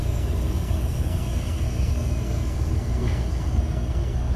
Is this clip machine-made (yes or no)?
yes